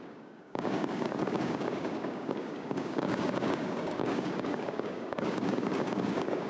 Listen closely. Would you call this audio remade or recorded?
remade